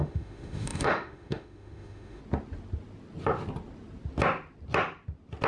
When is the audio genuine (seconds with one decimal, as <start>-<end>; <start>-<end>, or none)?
2.2-5.5